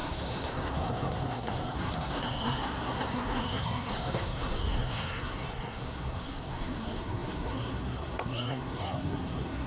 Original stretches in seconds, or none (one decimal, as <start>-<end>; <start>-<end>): none